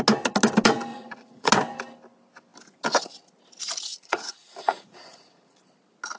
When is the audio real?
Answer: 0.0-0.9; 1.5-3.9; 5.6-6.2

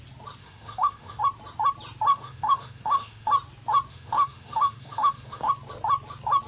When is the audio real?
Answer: 0.0-0.4; 1.2-2.1; 3.3-3.9; 5.5-6.5